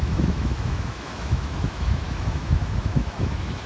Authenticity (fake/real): fake